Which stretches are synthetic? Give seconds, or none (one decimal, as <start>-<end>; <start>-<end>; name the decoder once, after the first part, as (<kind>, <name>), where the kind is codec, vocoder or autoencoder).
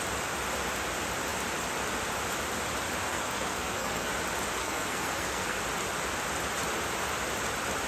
3.1-4.1 (codec, SNAC); 4.6-5.6